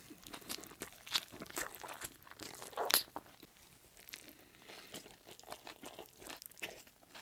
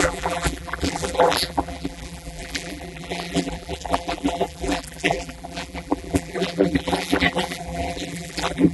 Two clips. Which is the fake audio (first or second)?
second